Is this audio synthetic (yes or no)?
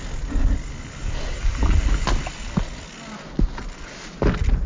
no